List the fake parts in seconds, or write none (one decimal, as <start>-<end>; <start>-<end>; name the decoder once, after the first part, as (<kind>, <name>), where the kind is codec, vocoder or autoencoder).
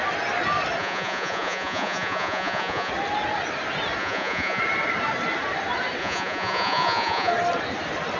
0.8-2.9 (vocoder, Vocos); 4.0-4.6; 6.0-7.3